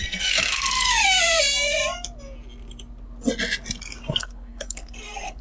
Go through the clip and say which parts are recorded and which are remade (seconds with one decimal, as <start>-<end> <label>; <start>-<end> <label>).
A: 0.0-1.0 remade; 1.0-4.2 recorded; 4.2-5.4 remade